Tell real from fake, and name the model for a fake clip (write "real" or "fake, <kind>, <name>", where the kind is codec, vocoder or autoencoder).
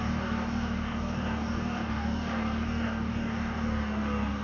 fake, codec, DAC